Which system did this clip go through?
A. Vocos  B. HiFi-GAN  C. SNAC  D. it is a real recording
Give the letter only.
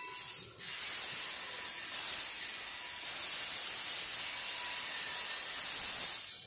D